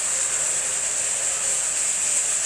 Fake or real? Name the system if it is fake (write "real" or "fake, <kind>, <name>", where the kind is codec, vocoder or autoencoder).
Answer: real